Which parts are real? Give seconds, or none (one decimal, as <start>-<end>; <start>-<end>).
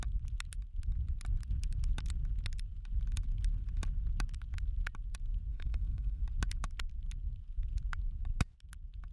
0.0-5.5; 6.2-9.1